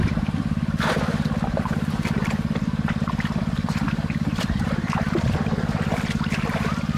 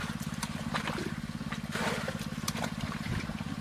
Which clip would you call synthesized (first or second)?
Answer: first